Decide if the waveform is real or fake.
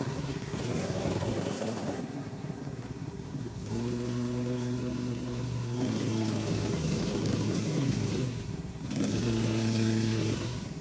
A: fake